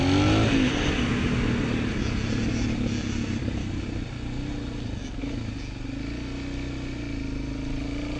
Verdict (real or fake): real